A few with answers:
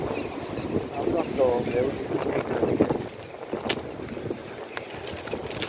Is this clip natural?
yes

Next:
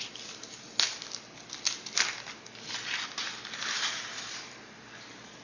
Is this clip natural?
yes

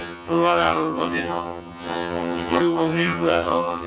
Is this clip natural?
no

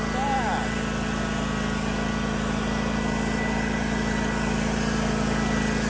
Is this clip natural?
yes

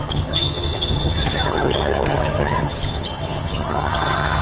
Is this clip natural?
no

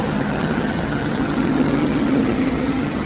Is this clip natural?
no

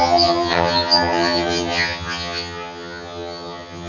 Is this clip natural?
no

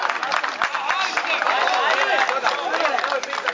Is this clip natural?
yes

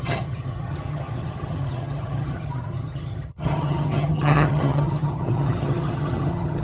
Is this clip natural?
no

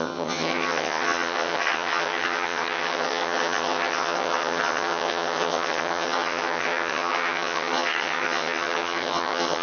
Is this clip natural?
no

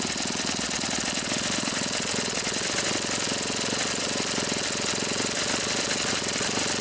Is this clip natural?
yes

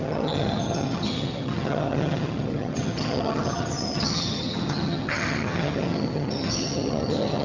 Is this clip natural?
no